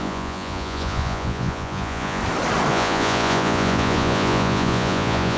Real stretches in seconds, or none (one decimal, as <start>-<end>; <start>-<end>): 2.2-2.7